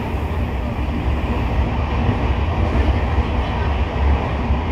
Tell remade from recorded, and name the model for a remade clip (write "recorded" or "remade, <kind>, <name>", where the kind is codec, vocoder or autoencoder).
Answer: recorded